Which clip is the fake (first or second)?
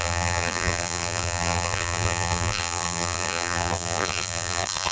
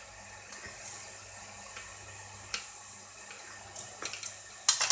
first